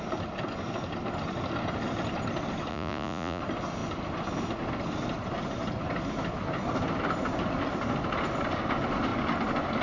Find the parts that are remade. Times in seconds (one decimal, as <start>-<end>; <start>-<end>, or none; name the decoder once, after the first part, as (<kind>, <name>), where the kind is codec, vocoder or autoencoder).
2.7-3.4 (vocoder, Vocos)